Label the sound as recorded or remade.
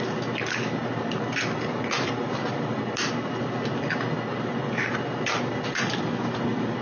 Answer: recorded